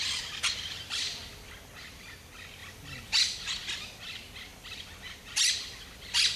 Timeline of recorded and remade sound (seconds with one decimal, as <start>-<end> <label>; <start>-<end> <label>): 0.0-6.4 recorded